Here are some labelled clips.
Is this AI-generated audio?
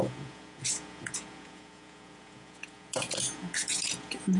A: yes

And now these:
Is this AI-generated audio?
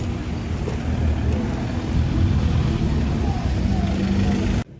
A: no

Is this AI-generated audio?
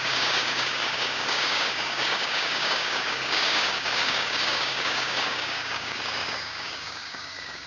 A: yes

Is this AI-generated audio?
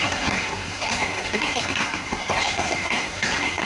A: yes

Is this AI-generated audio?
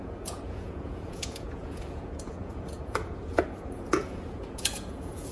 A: yes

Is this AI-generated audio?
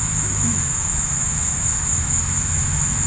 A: yes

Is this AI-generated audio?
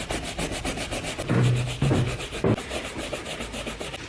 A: no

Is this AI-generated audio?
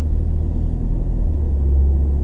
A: no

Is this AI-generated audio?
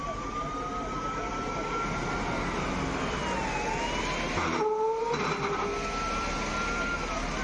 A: no